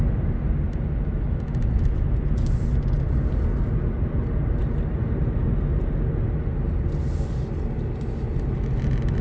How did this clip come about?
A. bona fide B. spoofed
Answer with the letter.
A